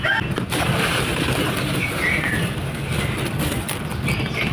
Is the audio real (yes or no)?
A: yes